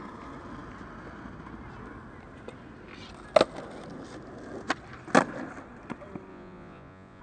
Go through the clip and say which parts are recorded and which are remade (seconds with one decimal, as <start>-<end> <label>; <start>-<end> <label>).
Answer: 0.0-6.3 recorded; 6.3-7.2 remade